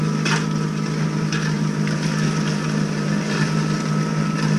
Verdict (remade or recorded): recorded